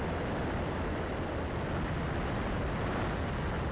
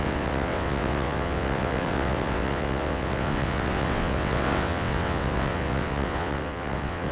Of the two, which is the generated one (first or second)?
second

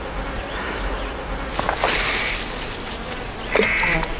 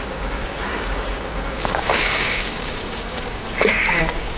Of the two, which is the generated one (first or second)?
second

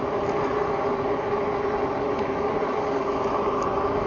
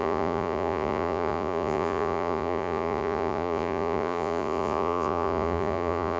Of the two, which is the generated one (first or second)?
second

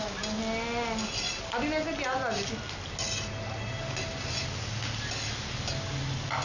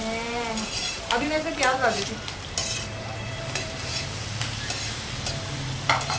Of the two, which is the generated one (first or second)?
second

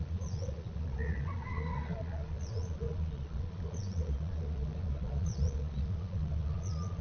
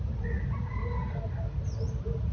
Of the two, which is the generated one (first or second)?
first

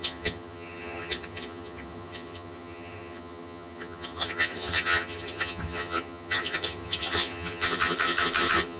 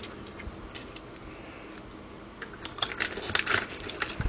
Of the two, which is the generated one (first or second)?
first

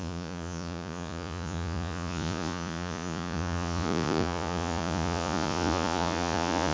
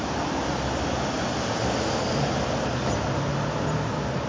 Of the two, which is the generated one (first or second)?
first